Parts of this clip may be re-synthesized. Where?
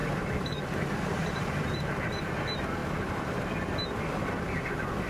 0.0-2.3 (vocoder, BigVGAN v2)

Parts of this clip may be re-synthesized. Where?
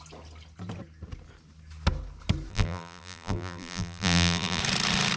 2.5-4.6 (vocoder, BigVGAN v2)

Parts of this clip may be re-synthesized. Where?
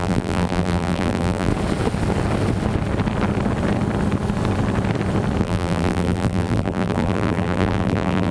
0.0-1.5 (vocoder, BigVGAN v2); 5.4-8.3